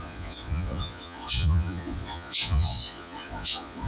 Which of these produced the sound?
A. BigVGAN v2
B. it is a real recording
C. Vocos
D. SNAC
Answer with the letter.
C